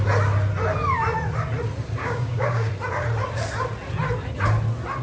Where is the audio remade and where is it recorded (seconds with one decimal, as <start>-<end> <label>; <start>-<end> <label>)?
0.0-2.0 recorded; 2.0-2.7 remade; 2.7-5.0 recorded